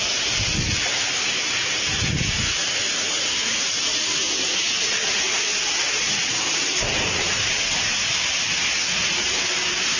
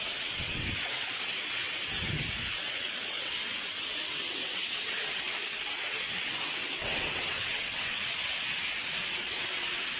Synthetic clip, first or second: second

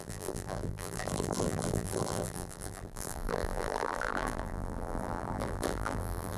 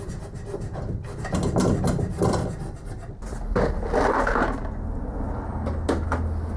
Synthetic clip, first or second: first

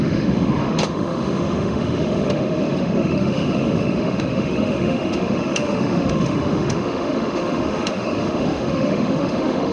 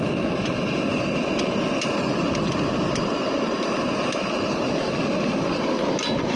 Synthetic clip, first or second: first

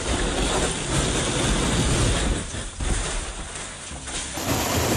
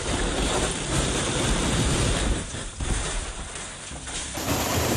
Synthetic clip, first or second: second